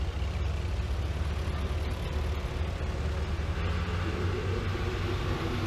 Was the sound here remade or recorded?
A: recorded